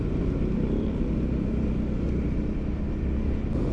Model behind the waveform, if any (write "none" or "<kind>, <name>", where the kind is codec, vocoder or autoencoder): none